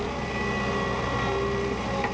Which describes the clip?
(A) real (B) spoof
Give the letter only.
A